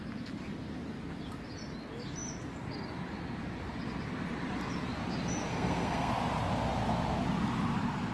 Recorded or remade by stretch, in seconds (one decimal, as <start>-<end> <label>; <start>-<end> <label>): 0.0-5.5 recorded; 5.5-6.1 remade; 6.1-8.1 recorded